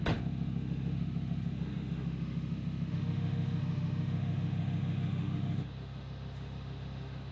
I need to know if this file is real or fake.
fake